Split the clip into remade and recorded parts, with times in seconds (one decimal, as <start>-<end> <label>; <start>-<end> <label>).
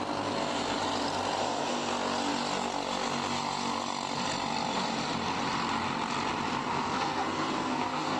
0.0-1.4 recorded; 1.4-1.9 remade; 1.9-6.6 recorded; 6.6-8.2 remade